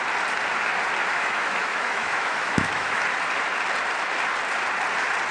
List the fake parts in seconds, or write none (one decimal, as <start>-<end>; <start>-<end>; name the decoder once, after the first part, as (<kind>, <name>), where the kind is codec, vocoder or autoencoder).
1.1-3.0 (autoencoder, DAC-VAE)